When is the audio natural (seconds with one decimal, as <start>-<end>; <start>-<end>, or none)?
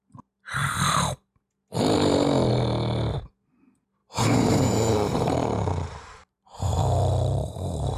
0.0-4.0